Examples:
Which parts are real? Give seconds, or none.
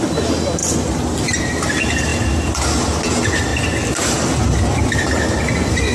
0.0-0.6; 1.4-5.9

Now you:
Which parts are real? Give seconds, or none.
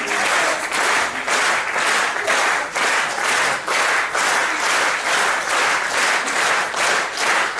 0.0-4.4; 6.7-7.6